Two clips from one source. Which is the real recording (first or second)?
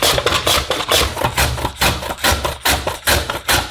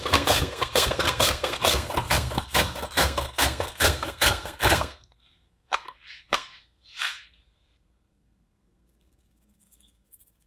first